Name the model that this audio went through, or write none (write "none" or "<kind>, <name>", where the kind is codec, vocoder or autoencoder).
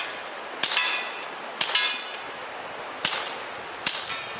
none